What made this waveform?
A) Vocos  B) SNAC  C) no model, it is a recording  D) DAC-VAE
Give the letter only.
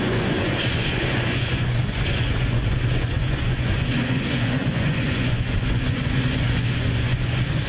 A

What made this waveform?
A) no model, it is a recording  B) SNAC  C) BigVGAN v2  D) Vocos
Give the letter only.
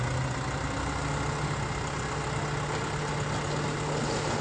A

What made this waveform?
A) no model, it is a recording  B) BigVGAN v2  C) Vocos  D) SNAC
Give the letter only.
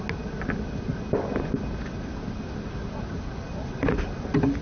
A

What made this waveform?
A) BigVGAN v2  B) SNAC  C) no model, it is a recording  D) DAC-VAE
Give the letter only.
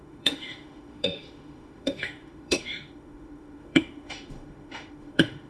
D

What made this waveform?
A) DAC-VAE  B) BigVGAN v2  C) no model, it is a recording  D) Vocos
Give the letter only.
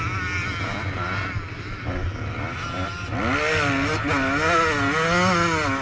C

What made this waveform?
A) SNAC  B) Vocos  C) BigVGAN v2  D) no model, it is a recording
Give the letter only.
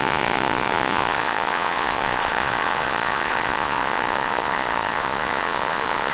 B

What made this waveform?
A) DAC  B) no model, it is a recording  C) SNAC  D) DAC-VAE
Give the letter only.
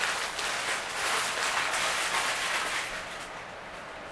B